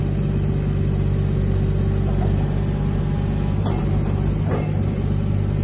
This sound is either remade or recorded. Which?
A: recorded